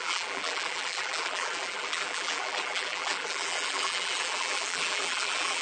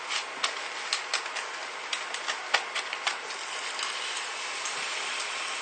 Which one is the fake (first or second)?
first